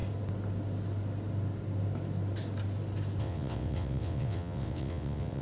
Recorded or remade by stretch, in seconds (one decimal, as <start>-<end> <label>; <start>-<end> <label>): 0.0-3.2 recorded; 3.2-5.4 remade